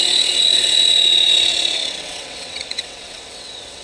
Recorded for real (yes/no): no